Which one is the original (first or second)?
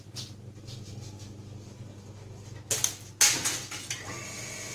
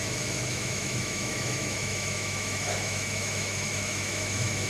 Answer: first